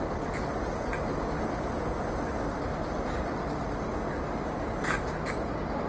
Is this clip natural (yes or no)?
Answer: yes